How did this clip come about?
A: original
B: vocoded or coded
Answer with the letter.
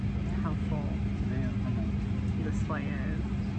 A